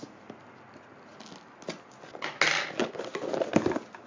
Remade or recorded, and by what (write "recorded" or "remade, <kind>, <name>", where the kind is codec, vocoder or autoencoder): recorded